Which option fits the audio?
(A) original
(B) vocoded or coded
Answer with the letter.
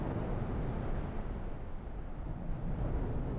A